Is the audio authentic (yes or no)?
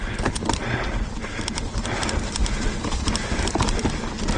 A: no